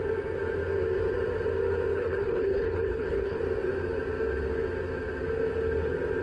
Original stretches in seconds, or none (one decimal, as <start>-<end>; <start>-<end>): 0.0-1.9; 3.4-6.2